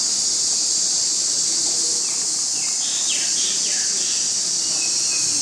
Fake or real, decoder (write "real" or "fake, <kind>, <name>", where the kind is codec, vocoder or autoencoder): real